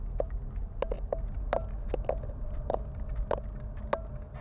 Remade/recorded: recorded